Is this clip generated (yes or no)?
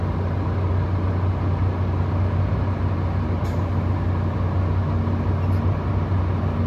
no